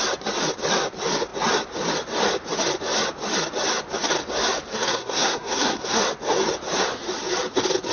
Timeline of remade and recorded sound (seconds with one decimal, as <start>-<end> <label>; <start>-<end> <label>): 0.0-4.7 recorded; 4.7-6.0 remade; 6.0-7.9 recorded